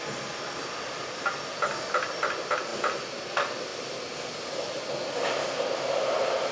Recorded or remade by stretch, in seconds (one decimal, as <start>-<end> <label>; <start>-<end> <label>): 0.0-6.5 recorded